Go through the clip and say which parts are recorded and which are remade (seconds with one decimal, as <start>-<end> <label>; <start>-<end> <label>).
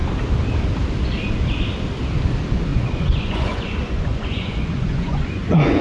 0.0-2.7 recorded; 2.7-5.8 remade